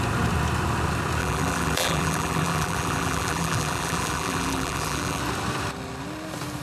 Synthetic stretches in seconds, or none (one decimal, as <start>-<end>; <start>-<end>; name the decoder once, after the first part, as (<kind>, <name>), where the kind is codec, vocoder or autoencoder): 1.2-5.2 (vocoder, BigVGAN v2)